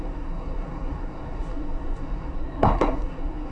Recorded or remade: remade